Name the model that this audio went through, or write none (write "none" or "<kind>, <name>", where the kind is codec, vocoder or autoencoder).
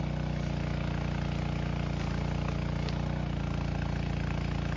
none